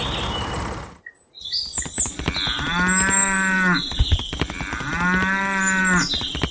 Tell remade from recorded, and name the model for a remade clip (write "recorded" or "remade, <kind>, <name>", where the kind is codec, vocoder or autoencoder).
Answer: recorded